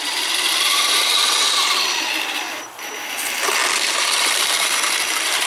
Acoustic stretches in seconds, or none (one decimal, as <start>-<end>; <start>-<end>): 0.0-5.5